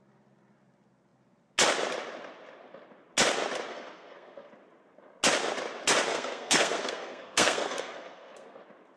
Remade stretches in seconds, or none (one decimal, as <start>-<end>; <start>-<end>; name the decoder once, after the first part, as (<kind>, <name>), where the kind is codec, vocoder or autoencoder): 3.7-4.5 (codec, SNAC); 6.1-8.6